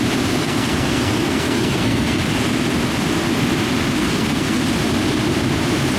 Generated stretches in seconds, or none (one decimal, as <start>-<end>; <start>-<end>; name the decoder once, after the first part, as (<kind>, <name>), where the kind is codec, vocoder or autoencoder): 0.4-2.2 (codec, SNAC); 4.0-4.6